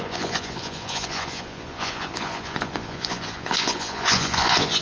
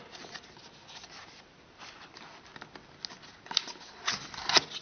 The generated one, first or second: first